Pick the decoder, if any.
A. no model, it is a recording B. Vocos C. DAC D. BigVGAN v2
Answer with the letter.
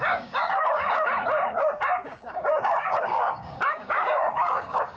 C